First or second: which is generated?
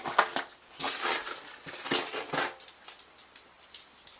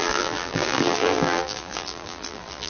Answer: second